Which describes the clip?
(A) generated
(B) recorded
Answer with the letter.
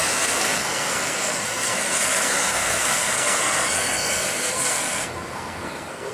A